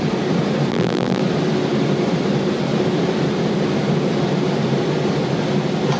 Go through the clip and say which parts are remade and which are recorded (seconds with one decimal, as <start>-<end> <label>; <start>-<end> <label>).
0.0-0.7 recorded; 0.7-1.2 remade; 1.2-6.0 recorded